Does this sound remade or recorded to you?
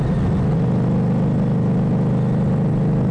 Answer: recorded